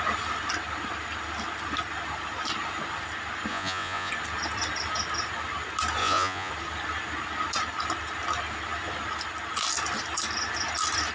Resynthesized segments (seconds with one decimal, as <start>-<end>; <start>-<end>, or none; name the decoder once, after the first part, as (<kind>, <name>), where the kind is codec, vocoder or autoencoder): 3.5-4.1 (vocoder, Vocos); 6.0-6.5

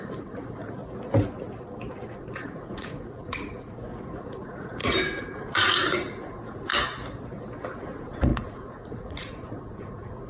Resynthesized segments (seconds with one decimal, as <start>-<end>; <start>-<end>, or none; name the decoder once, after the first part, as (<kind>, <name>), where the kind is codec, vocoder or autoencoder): 0.0-0.8 (vocoder, Vocos); 1.9-6.7; 7.8-10.3

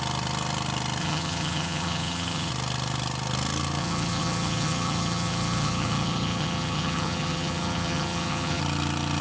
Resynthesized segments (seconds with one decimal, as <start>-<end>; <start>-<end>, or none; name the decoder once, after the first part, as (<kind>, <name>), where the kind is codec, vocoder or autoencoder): 1.0-2.5 (vocoder, HiFi-GAN); 3.8-8.6

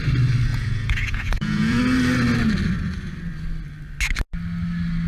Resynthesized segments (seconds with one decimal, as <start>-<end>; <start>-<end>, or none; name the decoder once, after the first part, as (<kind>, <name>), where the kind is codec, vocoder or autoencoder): 0.5-1.8 (vocoder, Vocos)

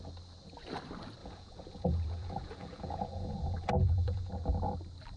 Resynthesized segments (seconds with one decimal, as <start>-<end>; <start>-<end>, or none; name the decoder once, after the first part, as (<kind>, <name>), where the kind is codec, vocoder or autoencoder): 1.2-4.3 (vocoder, Vocos)

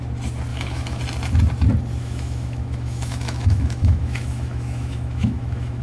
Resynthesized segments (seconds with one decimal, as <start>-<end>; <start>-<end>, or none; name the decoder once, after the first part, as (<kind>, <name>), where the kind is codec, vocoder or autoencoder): 0.5-1.0 (autoencoder, DAC-VAE); 2.0-5.8

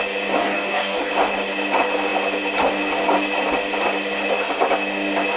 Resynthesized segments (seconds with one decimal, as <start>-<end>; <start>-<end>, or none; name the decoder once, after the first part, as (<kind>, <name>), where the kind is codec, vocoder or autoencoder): 0.4-1.1 (codec, DAC)